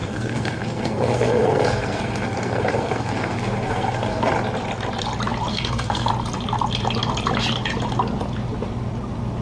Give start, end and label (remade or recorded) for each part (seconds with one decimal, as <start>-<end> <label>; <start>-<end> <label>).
0.0-4.3 remade; 4.3-5.5 recorded; 5.5-6.1 remade; 6.1-9.4 recorded